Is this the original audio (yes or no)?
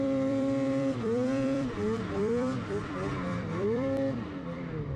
no